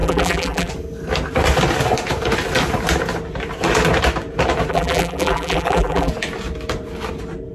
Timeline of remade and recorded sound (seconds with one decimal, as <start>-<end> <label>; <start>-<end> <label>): 0.0-0.7 remade; 0.7-4.7 recorded; 4.7-6.1 remade; 6.1-7.5 recorded

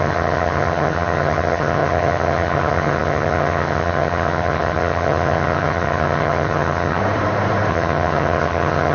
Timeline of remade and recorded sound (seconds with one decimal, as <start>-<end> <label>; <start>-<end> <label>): 0.0-7.0 remade; 7.0-7.7 recorded; 7.7-8.9 remade